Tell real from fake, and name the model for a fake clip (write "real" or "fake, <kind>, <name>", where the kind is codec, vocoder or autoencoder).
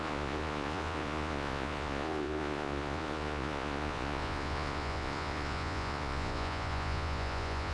fake, vocoder, Vocos